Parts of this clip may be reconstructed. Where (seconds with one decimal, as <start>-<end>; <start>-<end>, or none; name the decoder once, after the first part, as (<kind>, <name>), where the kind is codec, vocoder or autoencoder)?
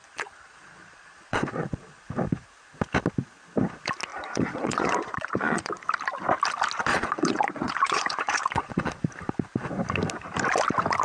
0.0-2.0 (vocoder, Vocos); 4.1-5.7; 6.9-8.9